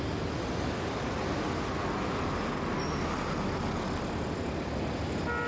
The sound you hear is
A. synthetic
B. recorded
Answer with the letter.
B